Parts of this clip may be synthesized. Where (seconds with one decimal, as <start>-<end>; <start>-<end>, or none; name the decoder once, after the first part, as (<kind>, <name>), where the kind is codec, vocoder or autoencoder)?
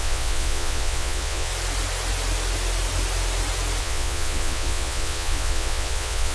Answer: 0.0-1.5 (vocoder, Vocos); 3.8-6.3